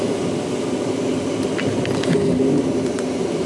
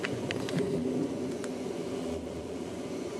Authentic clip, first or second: first